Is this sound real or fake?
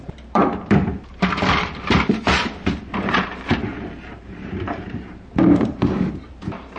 fake